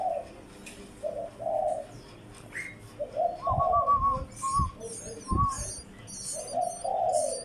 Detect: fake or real real